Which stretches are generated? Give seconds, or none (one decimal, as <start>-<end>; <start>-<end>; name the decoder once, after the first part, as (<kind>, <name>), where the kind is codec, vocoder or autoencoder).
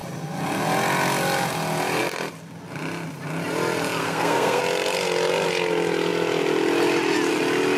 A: 4.0-4.6 (codec, SNAC)